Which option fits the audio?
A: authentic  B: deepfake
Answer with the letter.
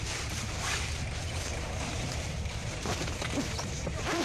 B